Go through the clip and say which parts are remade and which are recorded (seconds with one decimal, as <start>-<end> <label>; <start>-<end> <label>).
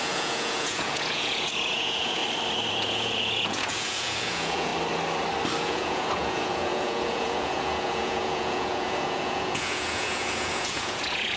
0.0-2.2 remade; 2.2-2.7 recorded; 2.7-4.7 remade; 4.7-5.6 recorded; 5.6-11.4 remade